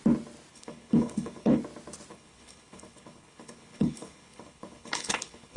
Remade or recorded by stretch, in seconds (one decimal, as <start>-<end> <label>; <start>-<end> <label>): 0.0-0.5 recorded; 0.5-1.6 remade; 1.6-2.1 recorded; 2.1-5.6 remade